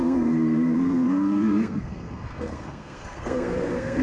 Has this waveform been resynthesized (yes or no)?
yes